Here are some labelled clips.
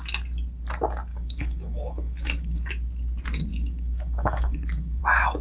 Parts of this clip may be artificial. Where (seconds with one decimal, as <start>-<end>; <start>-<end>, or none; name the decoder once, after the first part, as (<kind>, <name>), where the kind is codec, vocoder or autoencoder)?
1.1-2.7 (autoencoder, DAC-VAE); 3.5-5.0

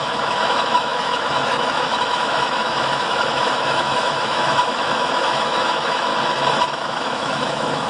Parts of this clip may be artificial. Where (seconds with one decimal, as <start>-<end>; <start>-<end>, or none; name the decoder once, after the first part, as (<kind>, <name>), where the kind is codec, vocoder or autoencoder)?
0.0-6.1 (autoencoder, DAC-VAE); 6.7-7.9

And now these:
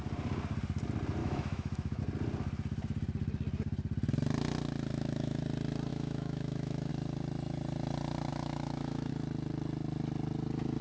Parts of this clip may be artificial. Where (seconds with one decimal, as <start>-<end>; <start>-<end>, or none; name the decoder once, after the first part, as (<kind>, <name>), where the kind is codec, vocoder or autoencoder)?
1.2-2.0 (autoencoder, DAC-VAE); 4.9-5.4; 5.9-6.9; 8.3-9.1